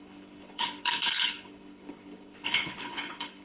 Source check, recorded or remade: remade